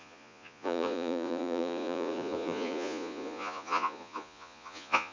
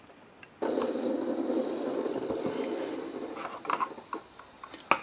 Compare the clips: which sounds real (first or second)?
second